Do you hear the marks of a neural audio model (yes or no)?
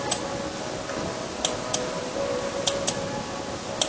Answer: no